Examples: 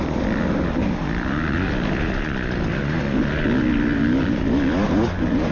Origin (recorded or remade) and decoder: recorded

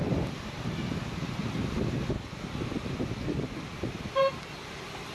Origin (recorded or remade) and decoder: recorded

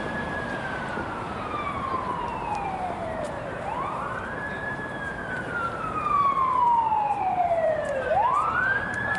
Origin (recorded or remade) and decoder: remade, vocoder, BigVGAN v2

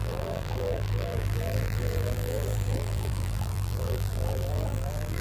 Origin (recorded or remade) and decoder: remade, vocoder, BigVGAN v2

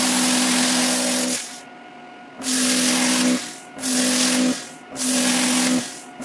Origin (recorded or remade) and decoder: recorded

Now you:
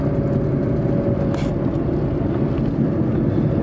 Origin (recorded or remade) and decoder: recorded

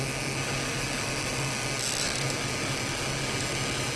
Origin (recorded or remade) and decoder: recorded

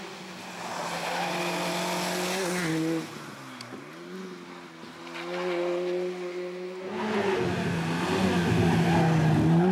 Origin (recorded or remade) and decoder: recorded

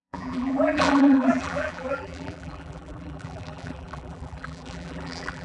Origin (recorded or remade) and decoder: remade, vocoder, BigVGAN v2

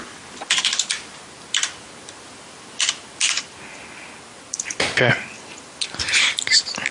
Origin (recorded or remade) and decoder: recorded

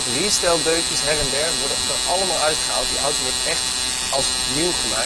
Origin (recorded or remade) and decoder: recorded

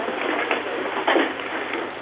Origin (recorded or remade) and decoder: recorded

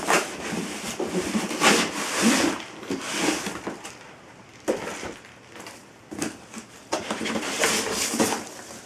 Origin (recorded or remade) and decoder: remade, vocoder, BigVGAN v2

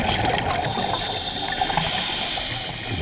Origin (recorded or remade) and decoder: recorded